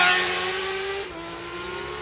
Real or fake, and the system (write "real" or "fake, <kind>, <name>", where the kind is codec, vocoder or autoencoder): real